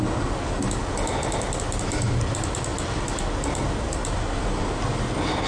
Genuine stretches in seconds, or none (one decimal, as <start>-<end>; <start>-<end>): 0.0-5.5